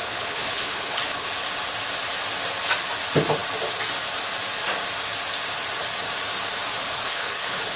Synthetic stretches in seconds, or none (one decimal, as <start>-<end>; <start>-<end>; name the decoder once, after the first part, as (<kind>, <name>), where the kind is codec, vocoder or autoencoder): 0.0-1.3 (codec, HILCodec); 6.8-7.8